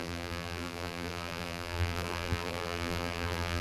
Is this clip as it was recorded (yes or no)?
no